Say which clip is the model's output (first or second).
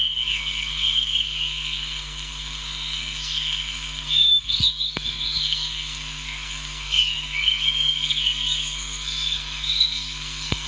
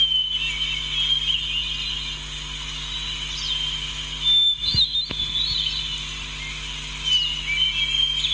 first